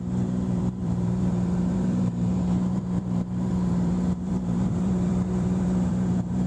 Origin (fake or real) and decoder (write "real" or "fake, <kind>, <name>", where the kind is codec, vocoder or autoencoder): fake, vocoder, BigVGAN v2